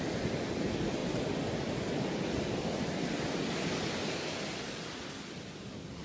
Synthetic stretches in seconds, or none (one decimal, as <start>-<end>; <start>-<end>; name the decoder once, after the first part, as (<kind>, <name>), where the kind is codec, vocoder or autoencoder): none